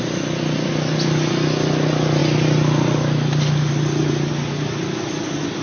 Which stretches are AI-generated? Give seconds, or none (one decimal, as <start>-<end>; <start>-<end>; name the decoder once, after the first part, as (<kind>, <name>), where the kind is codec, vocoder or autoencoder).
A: none